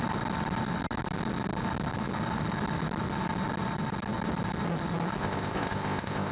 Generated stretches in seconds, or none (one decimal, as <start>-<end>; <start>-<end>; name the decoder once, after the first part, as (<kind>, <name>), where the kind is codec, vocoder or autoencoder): 5.2-6.3 (codec, ZipCodec)